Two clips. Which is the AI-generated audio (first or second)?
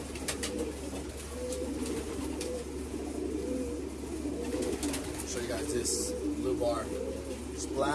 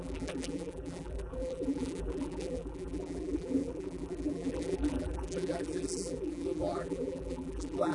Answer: second